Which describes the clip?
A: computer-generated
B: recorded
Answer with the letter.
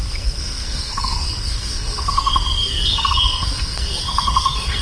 A